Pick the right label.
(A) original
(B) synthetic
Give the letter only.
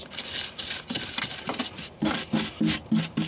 A